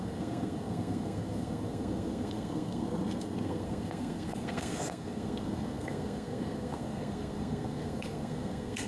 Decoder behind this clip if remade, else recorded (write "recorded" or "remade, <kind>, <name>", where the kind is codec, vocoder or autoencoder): remade, codec, SNAC